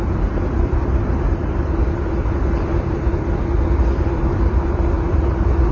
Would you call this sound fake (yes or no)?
no